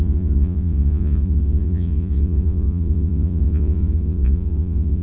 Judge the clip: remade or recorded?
remade